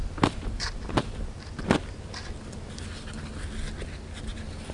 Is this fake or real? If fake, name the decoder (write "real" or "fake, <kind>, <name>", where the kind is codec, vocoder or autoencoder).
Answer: real